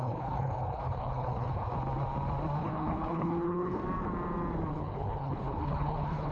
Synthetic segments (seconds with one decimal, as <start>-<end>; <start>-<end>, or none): 0.0-1.7; 2.6-3.8; 4.7-6.3